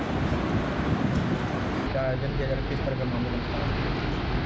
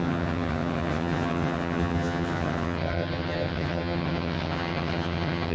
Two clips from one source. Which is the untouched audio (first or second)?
first